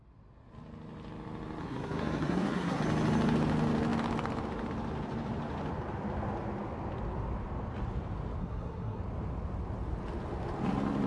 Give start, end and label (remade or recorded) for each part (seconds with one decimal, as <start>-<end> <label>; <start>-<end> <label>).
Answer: 0.0-1.6 recorded; 1.6-2.8 remade; 2.8-8.4 recorded; 8.4-9.0 remade; 9.0-11.1 recorded